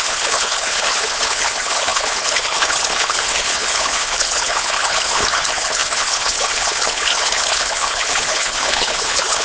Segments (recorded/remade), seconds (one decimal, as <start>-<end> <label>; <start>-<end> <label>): 0.0-9.4 remade